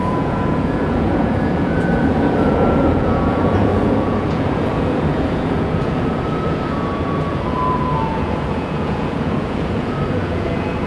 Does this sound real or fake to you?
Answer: fake